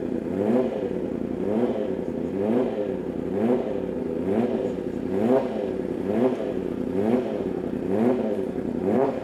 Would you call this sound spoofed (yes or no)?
yes